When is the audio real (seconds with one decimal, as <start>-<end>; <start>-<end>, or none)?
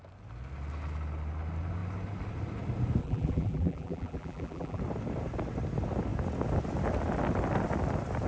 0.0-3.0; 4.8-8.3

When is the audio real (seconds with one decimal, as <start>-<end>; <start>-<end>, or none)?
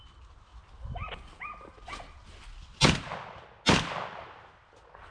0.0-5.1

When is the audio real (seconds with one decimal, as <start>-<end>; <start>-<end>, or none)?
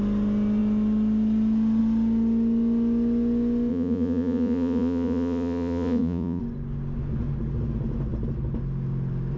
0.0-3.7; 6.4-9.4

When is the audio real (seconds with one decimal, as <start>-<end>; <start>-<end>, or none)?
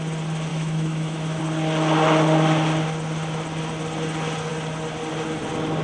0.0-0.5; 1.4-5.8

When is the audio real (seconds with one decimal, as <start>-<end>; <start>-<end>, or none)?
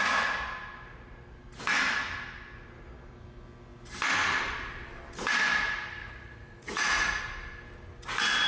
0.0-6.0; 7.2-8.5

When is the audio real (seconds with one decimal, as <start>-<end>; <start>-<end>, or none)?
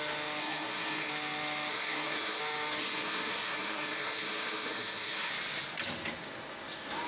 0.0-0.4; 1.1-1.7; 2.4-2.8; 5.3-7.1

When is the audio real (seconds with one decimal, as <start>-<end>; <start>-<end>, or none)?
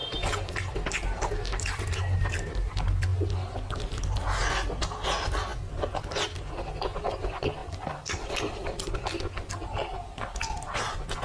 0.0-7.6; 8.9-11.2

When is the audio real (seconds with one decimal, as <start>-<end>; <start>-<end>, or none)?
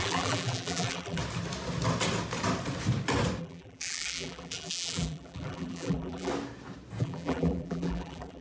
1.2-3.4; 6.3-7.0